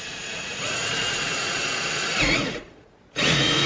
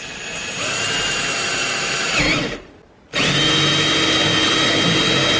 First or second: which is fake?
first